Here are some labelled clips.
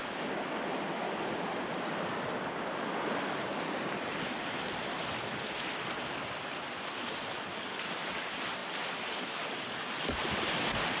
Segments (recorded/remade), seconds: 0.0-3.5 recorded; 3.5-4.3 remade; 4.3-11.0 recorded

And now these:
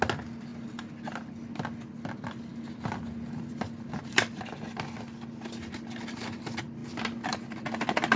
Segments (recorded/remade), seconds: 0.0-6.8 recorded; 6.8-8.2 remade

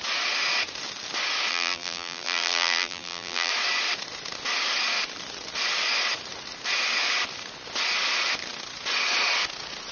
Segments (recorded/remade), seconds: 0.0-1.5 recorded; 1.5-3.5 remade; 3.5-9.9 recorded

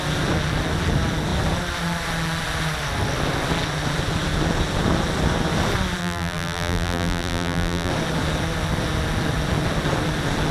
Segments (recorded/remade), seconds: 0.0-6.0 recorded; 6.0-7.9 remade; 7.9-10.5 recorded

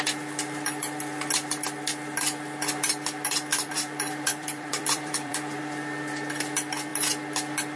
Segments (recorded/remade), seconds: 0.0-3.5 recorded; 3.5-5.6 remade; 5.6-7.8 recorded

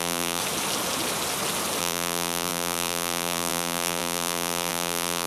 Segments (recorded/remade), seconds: 0.0-0.4 remade; 0.4-1.8 recorded; 1.8-5.3 remade

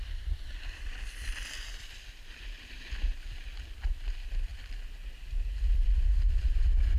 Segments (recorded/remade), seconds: 0.0-4.5 remade; 4.5-5.7 recorded; 5.7-7.0 remade